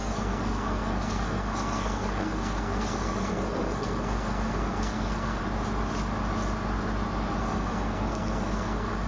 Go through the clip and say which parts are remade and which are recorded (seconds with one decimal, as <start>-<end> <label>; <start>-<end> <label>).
0.0-5.4 remade; 5.4-7.4 recorded; 7.4-9.1 remade